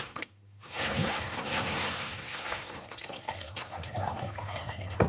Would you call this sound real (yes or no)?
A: no